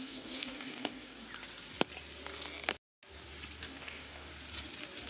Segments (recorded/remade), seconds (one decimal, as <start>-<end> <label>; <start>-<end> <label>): 0.0-1.2 remade; 1.2-3.6 recorded; 3.6-4.3 remade; 4.3-5.1 recorded